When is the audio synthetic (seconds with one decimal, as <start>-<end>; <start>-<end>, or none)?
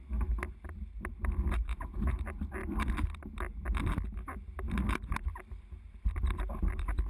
1.7-2.2